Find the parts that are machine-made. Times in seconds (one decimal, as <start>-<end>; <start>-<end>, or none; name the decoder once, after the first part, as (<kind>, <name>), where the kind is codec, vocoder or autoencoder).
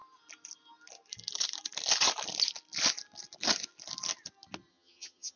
4.7-5.4 (vocoder, HiFi-GAN)